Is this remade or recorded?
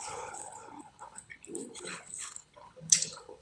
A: remade